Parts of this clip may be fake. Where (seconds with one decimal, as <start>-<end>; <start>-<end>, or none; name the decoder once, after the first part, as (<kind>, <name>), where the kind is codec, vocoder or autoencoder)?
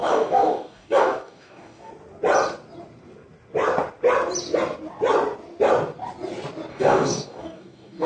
0.0-1.9 (codec, DAC); 6.7-8.1